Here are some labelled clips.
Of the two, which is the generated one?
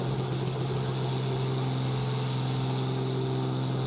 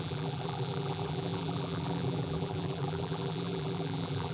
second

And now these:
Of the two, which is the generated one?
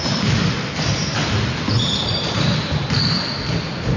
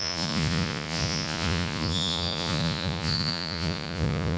second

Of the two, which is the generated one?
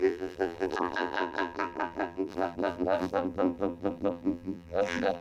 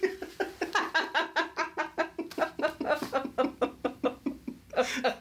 first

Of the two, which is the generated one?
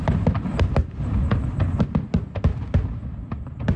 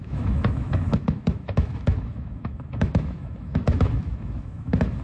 second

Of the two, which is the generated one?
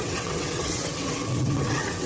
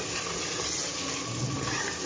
first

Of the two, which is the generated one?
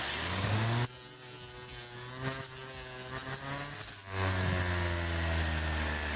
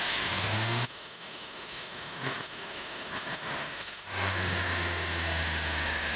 second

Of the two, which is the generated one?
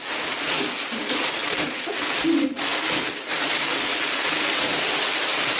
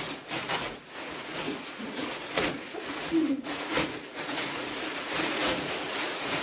second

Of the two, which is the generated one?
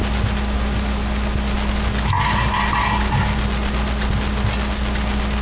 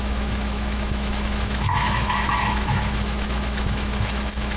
second